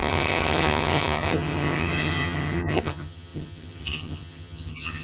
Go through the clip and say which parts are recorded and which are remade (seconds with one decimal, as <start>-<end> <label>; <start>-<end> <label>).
0.0-5.0 remade